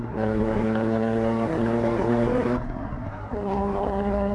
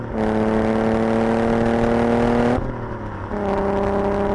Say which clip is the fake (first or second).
first